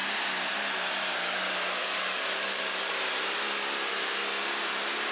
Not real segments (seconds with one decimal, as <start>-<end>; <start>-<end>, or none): 1.8-2.9